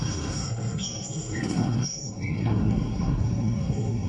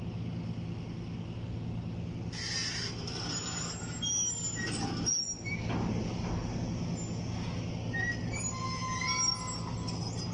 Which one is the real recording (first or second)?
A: second